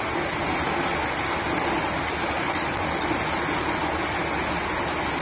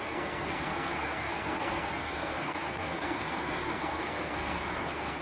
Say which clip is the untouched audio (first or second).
first